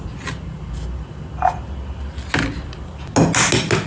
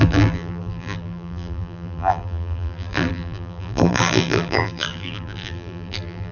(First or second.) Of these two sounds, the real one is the first